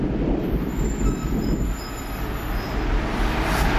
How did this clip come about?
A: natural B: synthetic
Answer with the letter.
B